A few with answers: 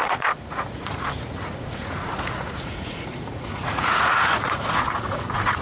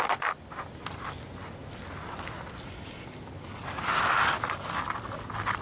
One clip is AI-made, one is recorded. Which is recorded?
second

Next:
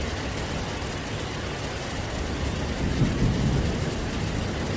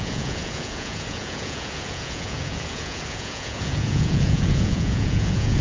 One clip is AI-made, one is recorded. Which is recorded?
first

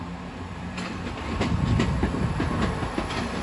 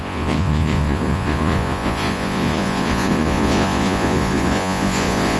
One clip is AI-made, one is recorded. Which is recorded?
first